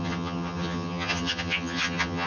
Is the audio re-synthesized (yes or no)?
yes